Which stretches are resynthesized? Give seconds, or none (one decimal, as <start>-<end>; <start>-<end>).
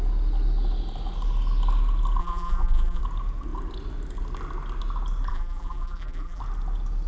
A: 2.2-3.0; 5.3-6.4